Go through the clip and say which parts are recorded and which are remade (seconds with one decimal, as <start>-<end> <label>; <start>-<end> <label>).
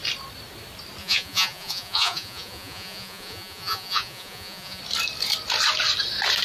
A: 0.0-1.0 recorded; 1.0-4.8 remade; 4.8-6.4 recorded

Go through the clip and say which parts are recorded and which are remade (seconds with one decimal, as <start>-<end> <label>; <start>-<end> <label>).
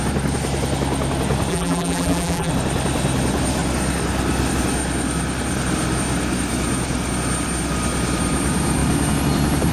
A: 0.0-1.5 recorded; 1.5-2.5 remade; 2.5-9.7 recorded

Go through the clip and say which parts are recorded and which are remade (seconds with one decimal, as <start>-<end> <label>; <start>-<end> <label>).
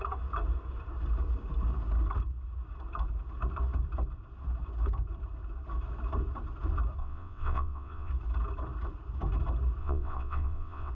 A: 0.0-7.0 recorded; 7.0-8.1 remade; 8.1-9.8 recorded; 9.8-10.9 remade